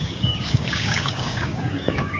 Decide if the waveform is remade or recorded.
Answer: remade